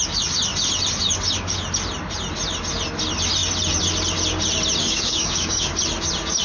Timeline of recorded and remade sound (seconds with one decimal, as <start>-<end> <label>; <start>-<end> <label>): 0.0-4.8 recorded; 4.8-5.7 remade; 5.7-6.4 recorded